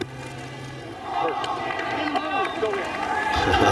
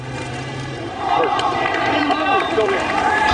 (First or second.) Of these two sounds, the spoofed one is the second